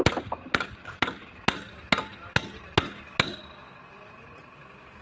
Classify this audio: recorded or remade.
recorded